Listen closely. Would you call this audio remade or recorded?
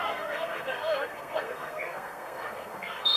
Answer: remade